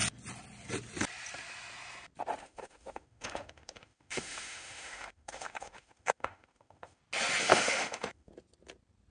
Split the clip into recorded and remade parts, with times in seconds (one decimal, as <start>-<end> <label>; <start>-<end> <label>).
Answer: 0.0-2.4 recorded; 2.4-7.0 remade; 7.0-7.4 recorded; 7.4-8.3 remade; 8.3-9.1 recorded